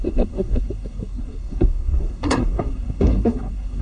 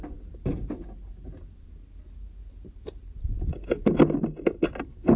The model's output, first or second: first